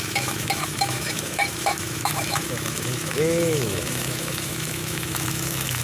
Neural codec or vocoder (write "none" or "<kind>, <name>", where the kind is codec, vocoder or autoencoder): autoencoder, DAC-VAE